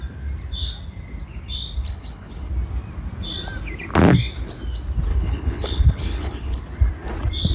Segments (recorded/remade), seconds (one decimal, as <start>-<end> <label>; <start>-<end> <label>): 0.0-1.8 recorded; 1.8-2.5 remade; 2.5-5.1 recorded; 5.1-6.6 remade; 6.6-7.5 recorded